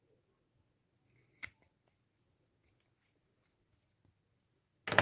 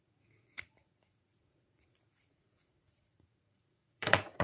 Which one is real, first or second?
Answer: first